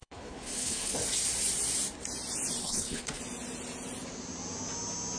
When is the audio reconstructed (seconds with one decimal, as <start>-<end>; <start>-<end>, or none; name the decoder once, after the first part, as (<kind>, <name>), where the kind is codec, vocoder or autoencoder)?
0.0-0.9 (codec, HILCodec); 2.6-3.2